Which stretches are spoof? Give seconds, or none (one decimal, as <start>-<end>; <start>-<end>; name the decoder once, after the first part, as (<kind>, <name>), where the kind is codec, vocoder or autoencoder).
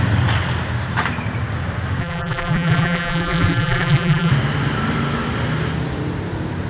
2.0-4.3 (vocoder, BigVGAN v2)